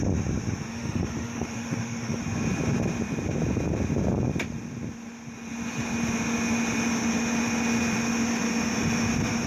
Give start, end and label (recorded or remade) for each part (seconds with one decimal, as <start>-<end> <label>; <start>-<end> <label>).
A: 0.0-0.7 recorded; 0.7-2.2 remade; 2.2-9.5 recorded